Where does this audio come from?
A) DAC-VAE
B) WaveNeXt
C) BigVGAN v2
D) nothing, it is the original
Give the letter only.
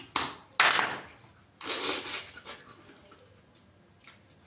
D